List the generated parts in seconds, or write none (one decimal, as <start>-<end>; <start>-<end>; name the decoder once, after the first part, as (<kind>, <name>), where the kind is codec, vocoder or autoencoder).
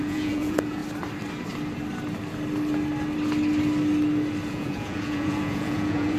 0.0-0.8 (vocoder, Vocos); 4.5-6.2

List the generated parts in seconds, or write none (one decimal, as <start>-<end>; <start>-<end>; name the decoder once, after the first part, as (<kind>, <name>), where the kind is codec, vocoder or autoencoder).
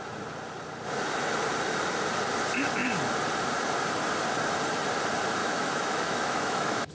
5.4-6.9 (autoencoder, DAC-VAE)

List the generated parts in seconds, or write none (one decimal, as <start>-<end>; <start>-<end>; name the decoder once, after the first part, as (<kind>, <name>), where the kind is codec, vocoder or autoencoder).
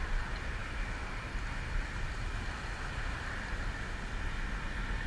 none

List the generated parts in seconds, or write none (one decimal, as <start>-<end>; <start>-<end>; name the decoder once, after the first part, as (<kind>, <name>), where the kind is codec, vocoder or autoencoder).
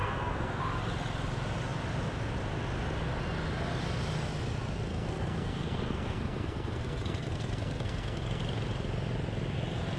0.0-0.6 (codec, SNAC); 4.9-8.4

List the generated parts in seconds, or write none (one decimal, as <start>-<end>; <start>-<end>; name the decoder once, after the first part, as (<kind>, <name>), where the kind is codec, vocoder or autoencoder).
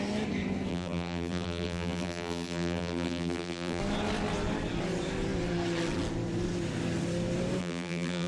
0.7-3.8 (vocoder, BigVGAN v2); 7.6-8.3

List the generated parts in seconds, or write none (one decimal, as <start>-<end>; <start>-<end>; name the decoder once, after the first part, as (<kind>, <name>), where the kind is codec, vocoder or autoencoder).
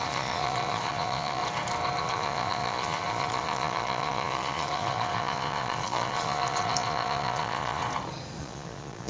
0.0-1.4 (vocoder, Vocos); 2.0-7.8; 8.4-9.1